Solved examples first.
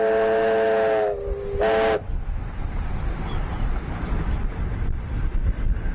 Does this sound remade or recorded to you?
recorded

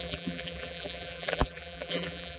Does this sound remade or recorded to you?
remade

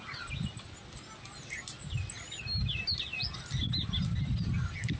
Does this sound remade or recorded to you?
recorded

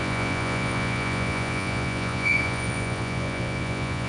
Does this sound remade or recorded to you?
remade